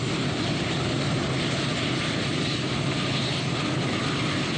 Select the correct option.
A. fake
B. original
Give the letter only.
B